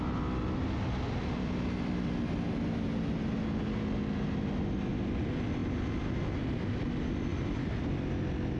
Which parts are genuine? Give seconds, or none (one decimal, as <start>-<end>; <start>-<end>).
0.0-5.6; 6.4-8.6